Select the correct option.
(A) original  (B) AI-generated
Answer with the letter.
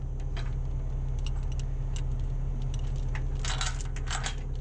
A